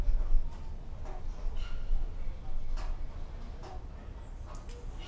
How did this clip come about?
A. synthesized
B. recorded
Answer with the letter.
B